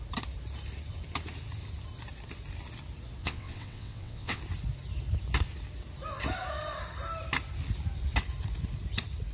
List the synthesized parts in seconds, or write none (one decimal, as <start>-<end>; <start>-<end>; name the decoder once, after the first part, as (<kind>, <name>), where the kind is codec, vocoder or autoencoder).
3.2-4.4 (vocoder, WaveNeXt)